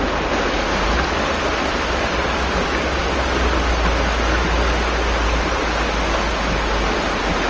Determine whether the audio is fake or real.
real